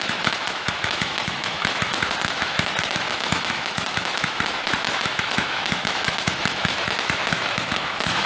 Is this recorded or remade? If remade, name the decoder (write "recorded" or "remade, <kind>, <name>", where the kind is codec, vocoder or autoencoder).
remade, autoencoder, DAC-VAE